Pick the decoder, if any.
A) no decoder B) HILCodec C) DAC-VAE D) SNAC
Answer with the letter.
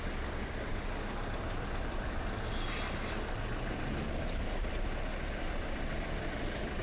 A